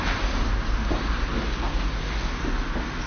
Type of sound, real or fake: real